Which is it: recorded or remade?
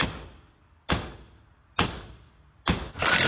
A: recorded